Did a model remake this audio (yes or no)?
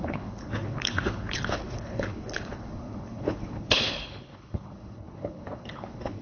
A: yes